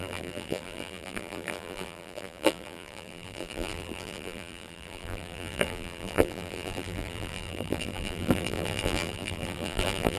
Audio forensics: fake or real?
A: fake